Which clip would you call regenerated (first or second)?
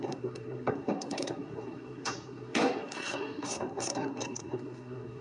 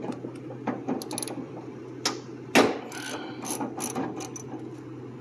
first